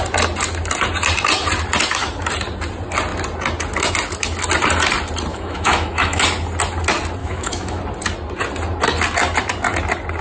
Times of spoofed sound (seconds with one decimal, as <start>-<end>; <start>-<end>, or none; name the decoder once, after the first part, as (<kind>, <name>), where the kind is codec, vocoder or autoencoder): 5.3-6.2 (autoencoder, DAC-VAE); 7.2-7.8